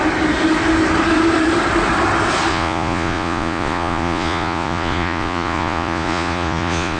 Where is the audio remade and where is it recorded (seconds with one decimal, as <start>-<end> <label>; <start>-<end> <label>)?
0.0-2.5 recorded; 2.5-7.0 remade